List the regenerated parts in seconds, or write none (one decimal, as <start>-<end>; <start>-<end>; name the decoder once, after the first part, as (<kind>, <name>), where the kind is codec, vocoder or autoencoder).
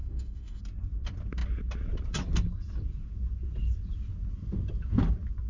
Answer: 0.0-0.6 (codec, DAC)